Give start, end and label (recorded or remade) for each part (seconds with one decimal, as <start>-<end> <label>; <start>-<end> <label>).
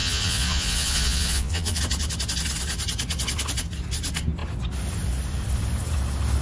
0.0-1.8 remade; 1.8-6.4 recorded